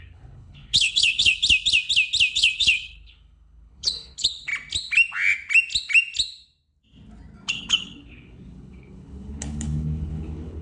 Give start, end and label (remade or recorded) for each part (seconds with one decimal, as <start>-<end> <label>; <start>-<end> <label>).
0.0-1.4 remade; 1.4-2.3 recorded; 2.3-4.5 remade; 4.5-7.5 recorded; 7.5-10.6 remade